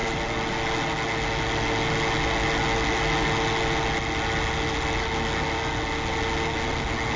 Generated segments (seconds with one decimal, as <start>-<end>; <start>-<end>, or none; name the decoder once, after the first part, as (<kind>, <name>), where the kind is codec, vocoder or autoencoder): none